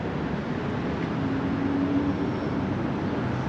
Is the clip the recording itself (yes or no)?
yes